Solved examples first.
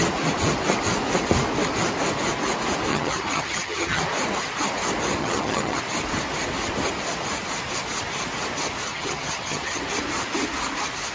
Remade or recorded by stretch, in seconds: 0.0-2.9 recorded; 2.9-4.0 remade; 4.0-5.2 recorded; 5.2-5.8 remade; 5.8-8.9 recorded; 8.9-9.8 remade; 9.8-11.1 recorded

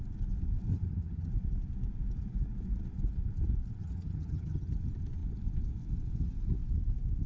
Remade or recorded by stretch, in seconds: 0.0-0.7 recorded; 0.7-1.3 remade; 1.3-3.8 recorded; 3.8-4.7 remade; 4.7-7.3 recorded